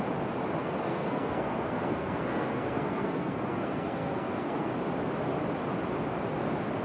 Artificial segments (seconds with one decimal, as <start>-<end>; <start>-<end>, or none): 0.6-4.7